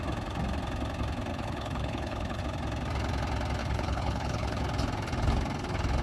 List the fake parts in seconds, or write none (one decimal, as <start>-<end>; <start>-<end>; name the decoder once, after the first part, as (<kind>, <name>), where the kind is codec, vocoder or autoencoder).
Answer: 1.3-2.4 (codec, HILCodec); 3.6-4.6